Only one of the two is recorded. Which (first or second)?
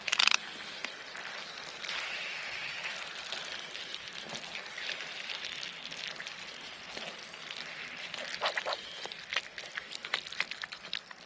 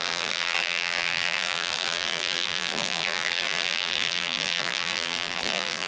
first